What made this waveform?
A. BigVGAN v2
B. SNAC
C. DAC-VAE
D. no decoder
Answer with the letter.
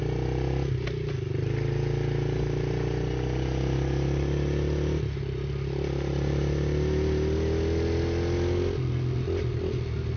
D